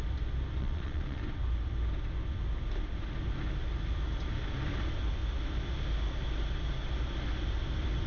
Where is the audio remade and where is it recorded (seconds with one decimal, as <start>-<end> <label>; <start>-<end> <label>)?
0.0-0.6 recorded; 0.6-1.2 remade; 1.2-8.1 recorded